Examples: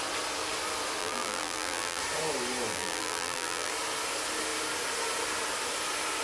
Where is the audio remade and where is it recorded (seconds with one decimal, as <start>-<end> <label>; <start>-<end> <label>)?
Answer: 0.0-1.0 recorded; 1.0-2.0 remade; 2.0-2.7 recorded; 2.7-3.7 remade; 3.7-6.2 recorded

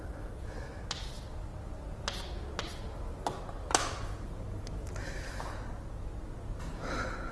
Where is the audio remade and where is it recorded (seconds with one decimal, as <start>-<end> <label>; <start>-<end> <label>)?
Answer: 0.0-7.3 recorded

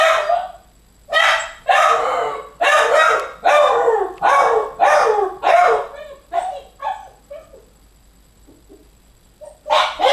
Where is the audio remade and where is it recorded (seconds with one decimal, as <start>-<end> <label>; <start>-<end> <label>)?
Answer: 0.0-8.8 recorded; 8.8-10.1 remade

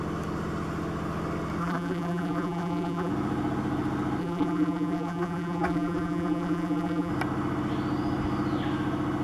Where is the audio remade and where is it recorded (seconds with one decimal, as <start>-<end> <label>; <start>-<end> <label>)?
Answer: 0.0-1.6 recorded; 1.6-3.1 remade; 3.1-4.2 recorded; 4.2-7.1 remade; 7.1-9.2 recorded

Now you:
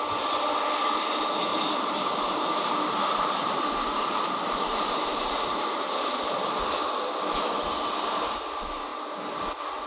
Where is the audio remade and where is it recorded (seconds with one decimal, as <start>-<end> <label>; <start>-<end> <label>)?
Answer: 0.0-1.5 recorded; 1.5-6.6 remade; 6.6-9.9 recorded